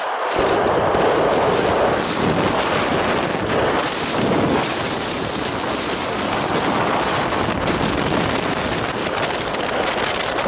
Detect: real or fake real